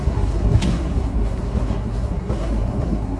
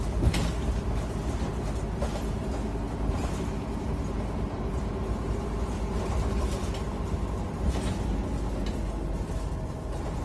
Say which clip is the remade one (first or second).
first